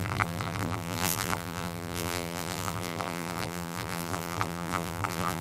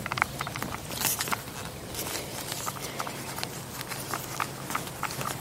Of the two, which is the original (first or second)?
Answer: second